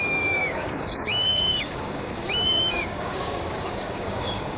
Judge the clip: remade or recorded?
remade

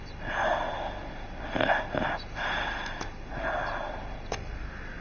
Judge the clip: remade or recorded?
recorded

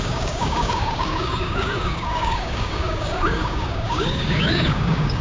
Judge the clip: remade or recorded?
remade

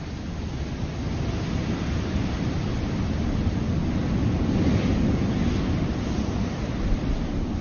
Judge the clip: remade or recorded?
recorded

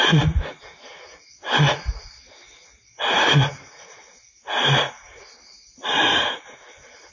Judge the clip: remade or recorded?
recorded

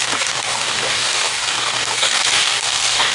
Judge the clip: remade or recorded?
remade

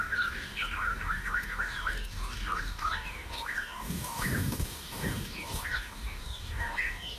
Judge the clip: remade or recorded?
remade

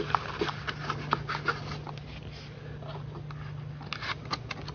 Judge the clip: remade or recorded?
recorded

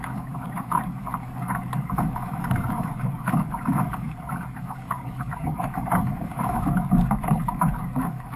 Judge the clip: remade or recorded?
remade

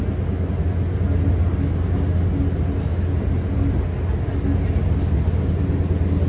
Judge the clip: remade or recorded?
recorded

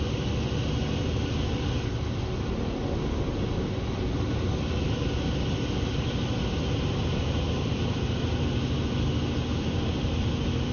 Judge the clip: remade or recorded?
recorded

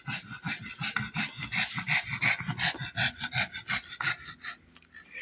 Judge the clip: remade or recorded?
recorded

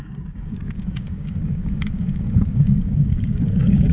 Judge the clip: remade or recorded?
remade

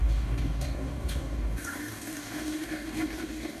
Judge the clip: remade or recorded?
remade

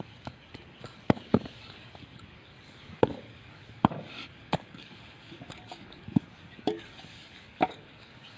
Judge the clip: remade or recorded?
remade